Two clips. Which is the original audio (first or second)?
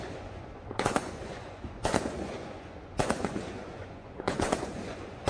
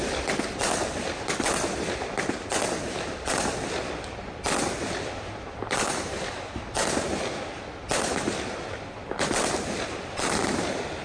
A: second